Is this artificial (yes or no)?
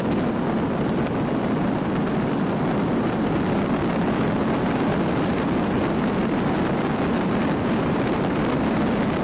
no